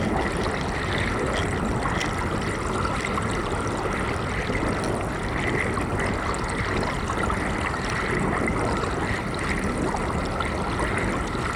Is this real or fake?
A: real